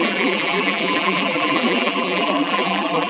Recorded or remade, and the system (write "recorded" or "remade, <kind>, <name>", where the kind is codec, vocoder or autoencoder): remade, vocoder, BigVGAN v2